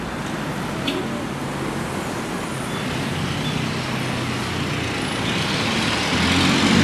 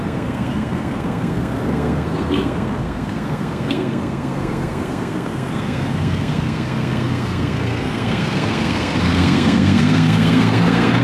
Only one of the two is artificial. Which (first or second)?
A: second